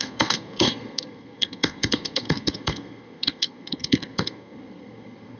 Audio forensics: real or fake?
fake